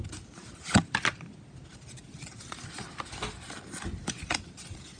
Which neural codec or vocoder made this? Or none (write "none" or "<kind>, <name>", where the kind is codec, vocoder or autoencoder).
none